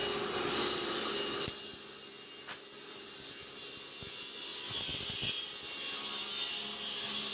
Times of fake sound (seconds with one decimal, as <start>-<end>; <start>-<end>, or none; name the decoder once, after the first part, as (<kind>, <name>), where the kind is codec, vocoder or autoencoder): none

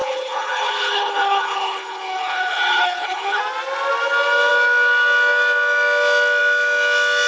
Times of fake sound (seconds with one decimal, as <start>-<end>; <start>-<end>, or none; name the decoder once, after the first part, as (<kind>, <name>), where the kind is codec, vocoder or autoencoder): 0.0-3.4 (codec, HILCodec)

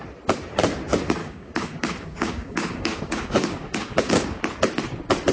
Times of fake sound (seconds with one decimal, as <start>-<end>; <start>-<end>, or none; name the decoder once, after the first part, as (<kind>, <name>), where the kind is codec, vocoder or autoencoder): 1.2-4.4 (codec, DAC)

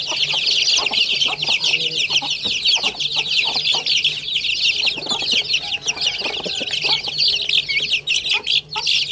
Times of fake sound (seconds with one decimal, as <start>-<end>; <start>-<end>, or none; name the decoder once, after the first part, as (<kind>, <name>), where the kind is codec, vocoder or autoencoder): none

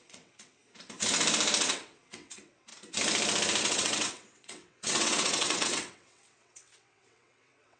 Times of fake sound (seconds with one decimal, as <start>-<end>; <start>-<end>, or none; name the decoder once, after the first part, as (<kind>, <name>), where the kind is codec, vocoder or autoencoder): 0.0-0.6 (vocoder, WaveNeXt); 1.6-2.7; 3.6-7.8

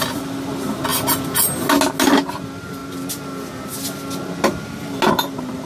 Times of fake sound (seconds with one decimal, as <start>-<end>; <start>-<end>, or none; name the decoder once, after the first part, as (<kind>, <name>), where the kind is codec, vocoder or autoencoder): 0.0-0.9 (vocoder, BigVGAN v2); 2.3-2.8; 5.1-5.7

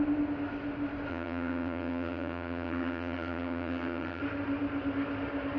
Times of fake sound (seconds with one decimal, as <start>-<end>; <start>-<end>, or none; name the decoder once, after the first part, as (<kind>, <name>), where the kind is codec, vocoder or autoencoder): 1.1-4.2 (vocoder, HiFi-GAN)

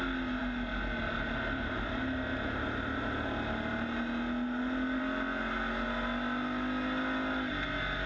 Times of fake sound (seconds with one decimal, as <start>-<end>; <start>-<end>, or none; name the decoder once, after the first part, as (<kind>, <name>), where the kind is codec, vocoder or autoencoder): none